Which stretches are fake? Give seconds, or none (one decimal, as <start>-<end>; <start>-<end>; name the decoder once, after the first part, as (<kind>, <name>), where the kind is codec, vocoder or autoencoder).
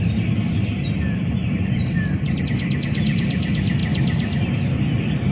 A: 1.4-2.4 (vocoder, BigVGAN v2)